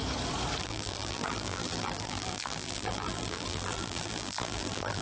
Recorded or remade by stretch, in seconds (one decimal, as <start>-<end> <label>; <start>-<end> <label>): 0.0-0.6 recorded; 0.6-5.0 remade